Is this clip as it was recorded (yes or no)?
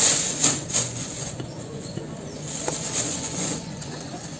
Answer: no